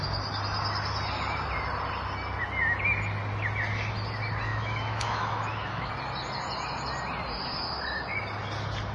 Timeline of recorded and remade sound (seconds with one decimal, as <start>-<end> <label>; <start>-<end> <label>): 0.0-4.5 recorded; 4.5-5.9 remade; 5.9-8.9 recorded